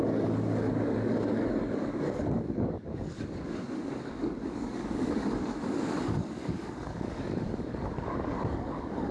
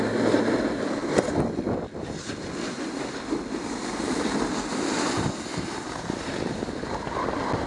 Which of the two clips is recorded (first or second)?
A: second